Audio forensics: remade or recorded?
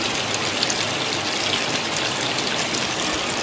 recorded